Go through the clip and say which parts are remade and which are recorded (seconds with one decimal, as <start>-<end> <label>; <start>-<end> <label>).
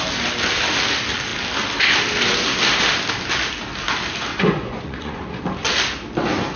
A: 0.0-4.3 recorded; 4.3-5.4 remade; 5.4-6.6 recorded